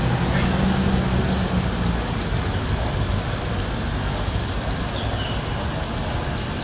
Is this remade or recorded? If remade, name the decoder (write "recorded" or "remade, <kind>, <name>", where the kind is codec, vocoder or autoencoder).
recorded